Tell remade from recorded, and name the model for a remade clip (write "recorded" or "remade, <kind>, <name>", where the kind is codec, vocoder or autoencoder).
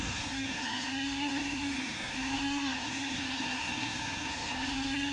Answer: remade, codec, SNAC